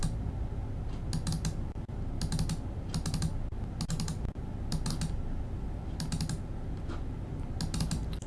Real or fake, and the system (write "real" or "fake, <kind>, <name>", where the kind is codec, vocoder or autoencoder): real